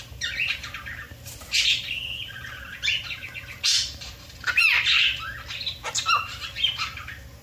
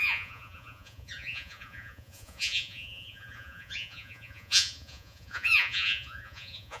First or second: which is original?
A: first